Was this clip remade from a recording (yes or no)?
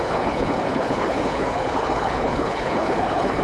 yes